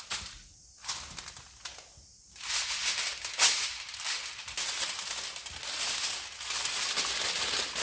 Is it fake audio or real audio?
real